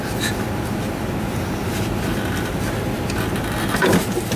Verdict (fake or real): real